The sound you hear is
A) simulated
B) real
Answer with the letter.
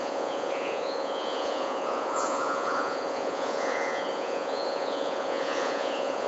A